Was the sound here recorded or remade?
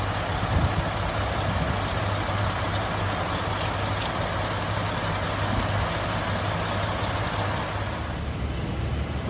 recorded